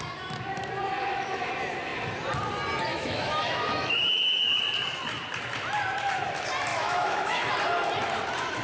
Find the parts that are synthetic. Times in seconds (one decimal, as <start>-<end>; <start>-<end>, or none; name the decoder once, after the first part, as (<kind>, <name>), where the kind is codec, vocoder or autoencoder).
1.0-1.5 (autoencoder, DAC-VAE); 2.9-4.6; 6.7-7.5